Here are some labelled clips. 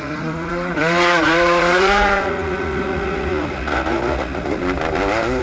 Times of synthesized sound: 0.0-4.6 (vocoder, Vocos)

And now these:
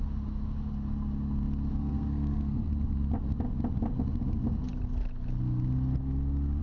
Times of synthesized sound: 1.7-2.7 (codec, SNAC)

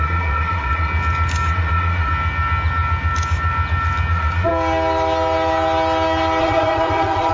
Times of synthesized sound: 0.0-0.9 (vocoder, Vocos); 1.5-2.1; 4.1-4.5; 6.4-7.3

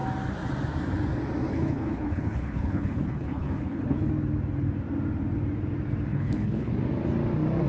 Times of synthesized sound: 1.5-4.1 (codec, HILCodec); 6.1-6.7

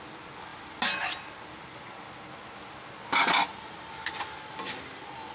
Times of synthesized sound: none